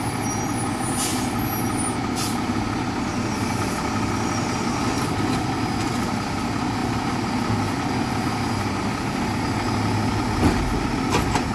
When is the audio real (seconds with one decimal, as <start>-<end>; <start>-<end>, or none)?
0.0-11.5